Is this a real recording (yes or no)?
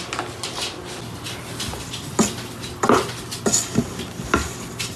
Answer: yes